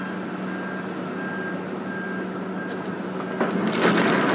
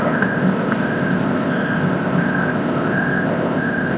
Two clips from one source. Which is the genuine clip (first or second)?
first